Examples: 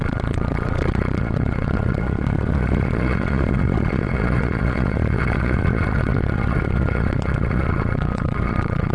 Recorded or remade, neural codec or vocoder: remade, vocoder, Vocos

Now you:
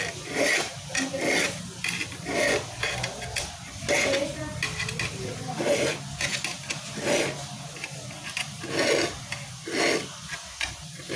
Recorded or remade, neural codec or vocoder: recorded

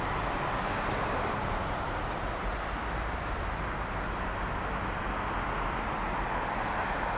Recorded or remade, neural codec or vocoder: recorded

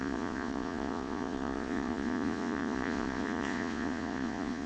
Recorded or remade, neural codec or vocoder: remade, vocoder, Vocos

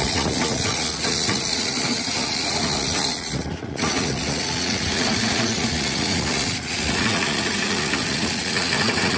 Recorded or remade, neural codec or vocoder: remade, vocoder, Vocos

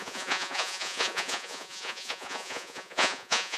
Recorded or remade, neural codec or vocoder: remade, vocoder, Vocos